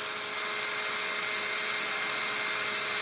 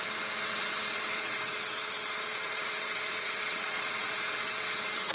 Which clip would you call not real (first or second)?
second